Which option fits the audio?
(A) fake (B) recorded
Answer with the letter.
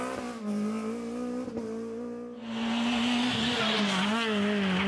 B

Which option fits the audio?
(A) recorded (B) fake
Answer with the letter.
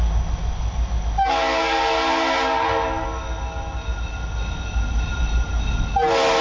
A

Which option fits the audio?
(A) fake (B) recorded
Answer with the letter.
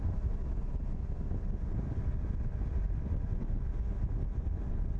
B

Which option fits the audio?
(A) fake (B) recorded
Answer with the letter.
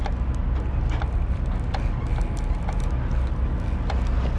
B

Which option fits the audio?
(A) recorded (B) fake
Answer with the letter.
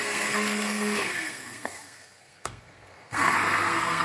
B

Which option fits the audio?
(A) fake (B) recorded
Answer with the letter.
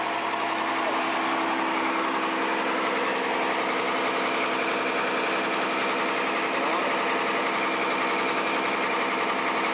B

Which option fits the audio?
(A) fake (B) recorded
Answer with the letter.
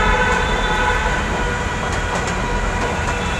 B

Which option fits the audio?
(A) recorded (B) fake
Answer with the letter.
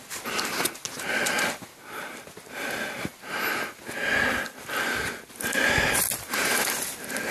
A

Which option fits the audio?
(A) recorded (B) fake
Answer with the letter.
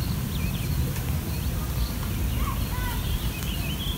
A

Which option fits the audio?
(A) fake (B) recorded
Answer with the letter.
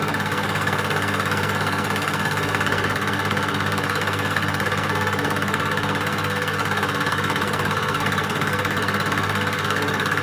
A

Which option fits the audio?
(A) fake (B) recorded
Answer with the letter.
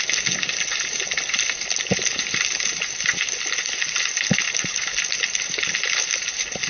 B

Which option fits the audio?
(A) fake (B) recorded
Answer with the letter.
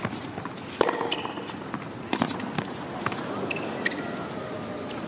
B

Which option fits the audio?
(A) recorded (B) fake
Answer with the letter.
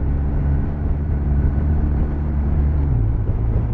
B